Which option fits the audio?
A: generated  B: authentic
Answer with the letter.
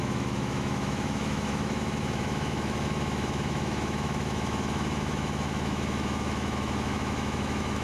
A